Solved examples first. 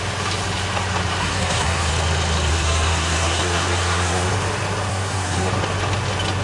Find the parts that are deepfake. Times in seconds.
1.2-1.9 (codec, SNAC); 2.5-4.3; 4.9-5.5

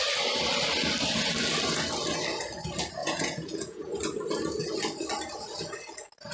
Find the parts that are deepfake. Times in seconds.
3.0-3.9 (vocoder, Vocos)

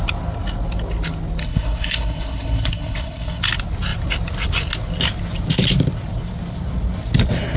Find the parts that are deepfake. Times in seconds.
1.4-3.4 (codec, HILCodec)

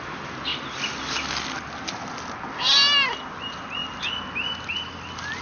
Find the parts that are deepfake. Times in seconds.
none

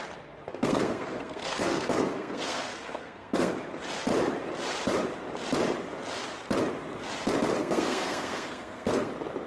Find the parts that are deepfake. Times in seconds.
0.5-3.5 (codec, SNAC); 7.6-9.1